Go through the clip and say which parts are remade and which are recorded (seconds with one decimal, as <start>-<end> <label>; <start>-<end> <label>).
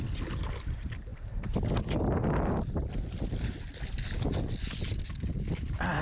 0.0-6.0 recorded